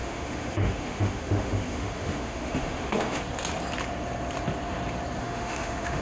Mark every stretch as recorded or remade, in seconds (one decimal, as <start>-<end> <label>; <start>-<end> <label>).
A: 0.0-3.2 remade; 3.2-5.2 recorded; 5.2-6.0 remade